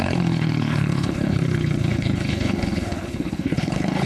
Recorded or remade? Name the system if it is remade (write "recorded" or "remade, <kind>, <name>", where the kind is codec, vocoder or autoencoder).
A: remade, codec, HILCodec